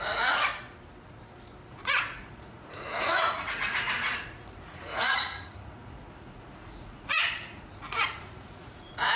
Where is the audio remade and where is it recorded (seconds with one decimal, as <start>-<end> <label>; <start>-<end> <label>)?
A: 0.0-0.5 remade; 0.5-1.7 recorded; 1.7-9.2 remade